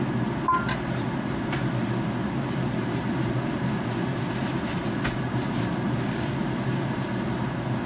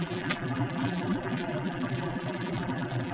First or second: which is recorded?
first